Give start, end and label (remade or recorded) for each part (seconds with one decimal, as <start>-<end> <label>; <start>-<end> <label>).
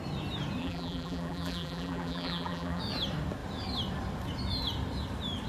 0.0-0.6 recorded; 0.6-2.8 remade; 2.8-5.5 recorded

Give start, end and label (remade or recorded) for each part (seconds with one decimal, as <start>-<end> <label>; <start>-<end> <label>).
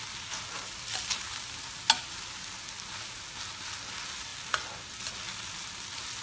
0.0-6.2 recorded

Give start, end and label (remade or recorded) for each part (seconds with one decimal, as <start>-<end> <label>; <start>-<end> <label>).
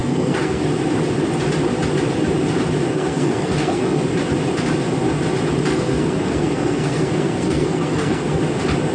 0.0-0.6 remade; 0.6-2.9 recorded; 2.9-4.0 remade; 4.0-5.7 recorded; 5.7-8.4 remade; 8.4-8.9 recorded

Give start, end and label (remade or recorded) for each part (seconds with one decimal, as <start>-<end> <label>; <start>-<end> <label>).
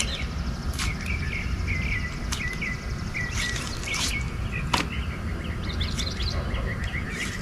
0.0-7.4 recorded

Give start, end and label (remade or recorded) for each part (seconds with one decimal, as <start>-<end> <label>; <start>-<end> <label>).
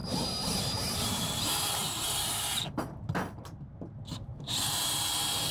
0.0-1.4 remade; 1.4-1.8 recorded; 1.8-2.3 remade; 2.3-4.3 recorded; 4.3-4.8 remade; 4.8-5.5 recorded